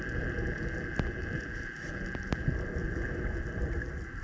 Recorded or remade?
recorded